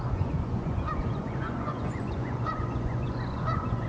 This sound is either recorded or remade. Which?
remade